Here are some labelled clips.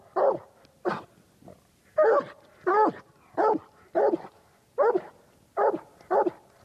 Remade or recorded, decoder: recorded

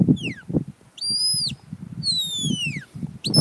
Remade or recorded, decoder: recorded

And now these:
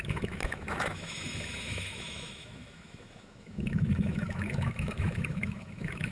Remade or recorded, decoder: remade, autoencoder, DAC-VAE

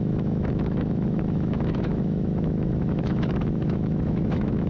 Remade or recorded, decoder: remade, autoencoder, DAC-VAE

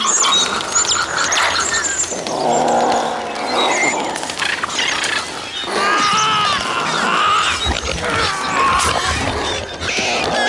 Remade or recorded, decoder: recorded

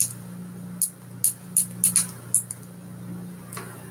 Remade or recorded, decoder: recorded